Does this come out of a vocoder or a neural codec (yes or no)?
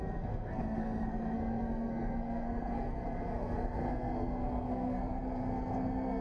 yes